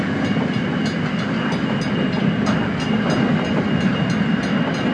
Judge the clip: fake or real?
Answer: real